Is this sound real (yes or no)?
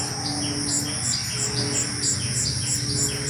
yes